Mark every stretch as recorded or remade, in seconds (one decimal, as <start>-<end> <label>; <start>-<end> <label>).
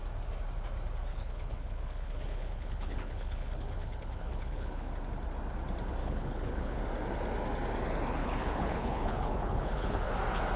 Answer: 0.0-1.1 recorded; 1.1-4.9 remade; 4.9-6.0 recorded; 6.0-6.8 remade; 6.8-8.2 recorded; 8.2-10.1 remade; 10.1-10.6 recorded